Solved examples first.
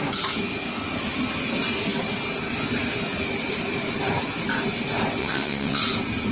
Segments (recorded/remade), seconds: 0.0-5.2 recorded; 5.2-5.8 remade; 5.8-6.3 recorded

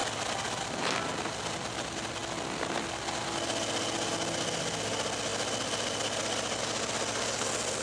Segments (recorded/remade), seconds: 0.0-7.8 recorded

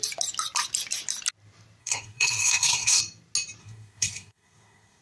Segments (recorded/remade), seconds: 0.0-1.8 recorded; 1.8-3.0 remade; 3.0-3.6 recorded; 3.6-5.0 remade

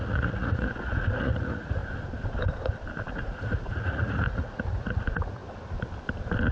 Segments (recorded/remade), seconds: 0.0-1.8 remade; 1.8-3.1 recorded; 3.1-5.4 remade; 5.4-6.5 recorded